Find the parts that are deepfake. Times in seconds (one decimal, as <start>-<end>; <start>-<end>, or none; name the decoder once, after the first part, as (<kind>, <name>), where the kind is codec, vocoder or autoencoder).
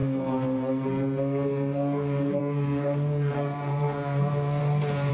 0.0-4.6 (codec, SNAC)